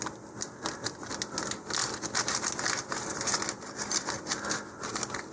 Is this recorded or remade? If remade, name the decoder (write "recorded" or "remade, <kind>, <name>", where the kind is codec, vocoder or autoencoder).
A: recorded